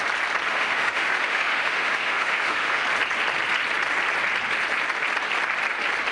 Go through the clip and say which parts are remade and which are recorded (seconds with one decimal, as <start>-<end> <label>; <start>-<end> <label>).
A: 0.0-0.5 recorded; 0.5-2.8 remade; 2.8-6.1 recorded